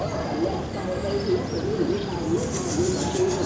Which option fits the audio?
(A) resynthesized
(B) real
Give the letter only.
B